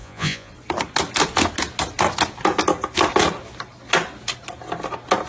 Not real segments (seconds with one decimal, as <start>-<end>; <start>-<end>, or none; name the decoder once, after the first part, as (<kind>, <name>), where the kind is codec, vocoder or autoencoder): 0.0-0.5 (vocoder, Vocos)